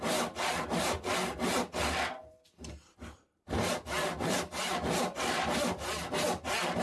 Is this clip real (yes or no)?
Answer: yes